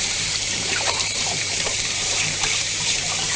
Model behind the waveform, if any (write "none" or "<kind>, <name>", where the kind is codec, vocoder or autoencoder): vocoder, BigVGAN v2